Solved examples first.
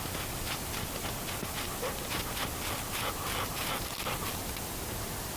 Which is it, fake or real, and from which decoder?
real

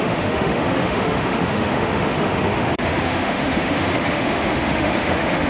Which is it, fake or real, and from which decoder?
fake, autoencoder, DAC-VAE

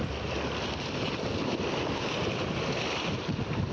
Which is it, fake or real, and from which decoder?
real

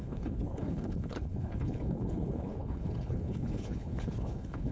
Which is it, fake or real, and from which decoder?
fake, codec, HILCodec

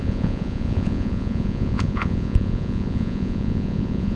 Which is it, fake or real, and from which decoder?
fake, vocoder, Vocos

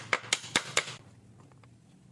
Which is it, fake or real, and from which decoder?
real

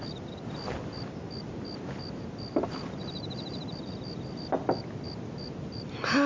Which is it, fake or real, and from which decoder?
real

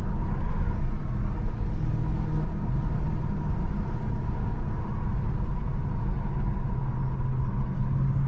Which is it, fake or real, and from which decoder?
real